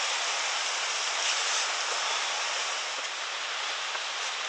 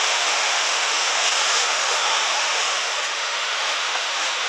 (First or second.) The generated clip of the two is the second